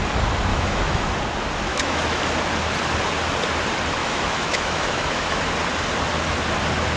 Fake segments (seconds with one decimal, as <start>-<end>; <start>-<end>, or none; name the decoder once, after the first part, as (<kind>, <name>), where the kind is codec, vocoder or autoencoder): 0.5-1.1 (autoencoder, DAC-VAE); 1.7-2.2; 4.0-5.5